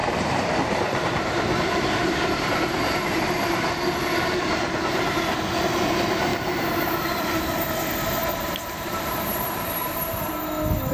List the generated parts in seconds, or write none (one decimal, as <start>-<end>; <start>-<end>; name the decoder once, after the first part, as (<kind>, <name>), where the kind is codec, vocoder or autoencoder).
0.0-3.7 (vocoder, BigVGAN v2); 6.3-7.7; 8.2-10.3